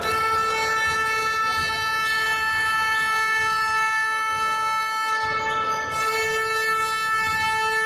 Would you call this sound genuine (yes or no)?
yes